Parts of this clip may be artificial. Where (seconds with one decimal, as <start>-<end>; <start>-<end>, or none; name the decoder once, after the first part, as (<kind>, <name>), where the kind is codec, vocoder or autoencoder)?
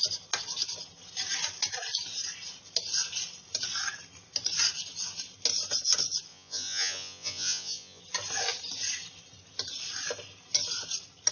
6.3-8.0 (vocoder, Vocos)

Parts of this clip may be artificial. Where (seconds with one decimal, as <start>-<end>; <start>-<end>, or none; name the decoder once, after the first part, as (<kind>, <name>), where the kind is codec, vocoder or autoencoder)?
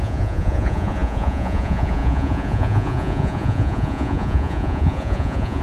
0.0-5.6 (vocoder, Vocos)